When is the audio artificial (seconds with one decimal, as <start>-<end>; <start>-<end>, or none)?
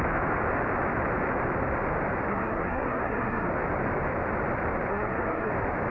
2.3-3.5; 4.9-5.5